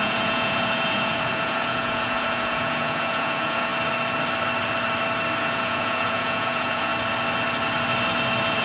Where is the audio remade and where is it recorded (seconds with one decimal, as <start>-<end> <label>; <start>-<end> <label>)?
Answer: 0.0-3.7 remade; 3.7-5.4 recorded; 5.4-6.9 remade; 6.9-8.6 recorded

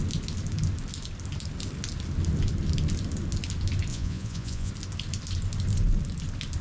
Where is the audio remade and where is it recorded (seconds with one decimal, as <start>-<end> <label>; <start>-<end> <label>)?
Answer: 0.0-3.9 recorded; 3.9-4.7 remade; 4.7-6.6 recorded

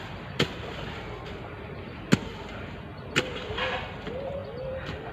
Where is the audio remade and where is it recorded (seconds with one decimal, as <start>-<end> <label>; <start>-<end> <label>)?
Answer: 0.0-5.1 recorded

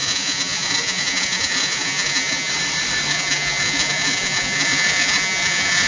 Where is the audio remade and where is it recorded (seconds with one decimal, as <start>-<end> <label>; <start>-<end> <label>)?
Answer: 0.0-2.5 remade; 2.5-3.1 recorded; 3.1-5.9 remade

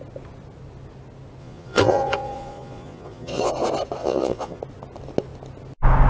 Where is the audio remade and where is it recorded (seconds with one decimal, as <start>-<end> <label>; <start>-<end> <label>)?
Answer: 0.0-1.4 recorded; 1.4-3.5 remade; 3.5-4.0 recorded; 4.0-4.6 remade; 4.6-6.1 recorded